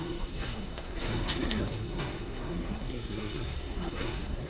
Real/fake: fake